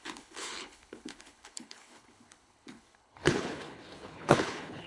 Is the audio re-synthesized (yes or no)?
yes